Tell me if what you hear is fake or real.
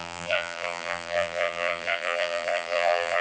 fake